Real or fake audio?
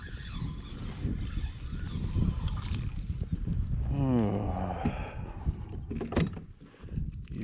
real